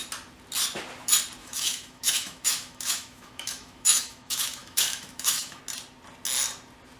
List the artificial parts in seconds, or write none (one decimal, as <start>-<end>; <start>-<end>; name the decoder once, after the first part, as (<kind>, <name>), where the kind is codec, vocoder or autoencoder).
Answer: 1.4-5.6 (autoencoder, DAC-VAE)